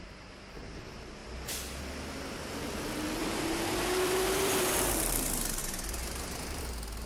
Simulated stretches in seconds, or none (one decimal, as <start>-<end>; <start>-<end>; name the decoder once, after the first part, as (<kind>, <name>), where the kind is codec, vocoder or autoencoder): 3.2-4.9 (vocoder, BigVGAN v2); 5.6-6.6